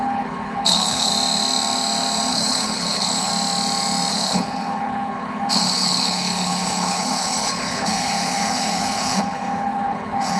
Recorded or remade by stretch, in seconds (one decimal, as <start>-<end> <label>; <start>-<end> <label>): 0.0-1.1 remade; 1.1-2.3 recorded; 2.3-3.3 remade; 3.3-4.1 recorded; 4.1-10.4 remade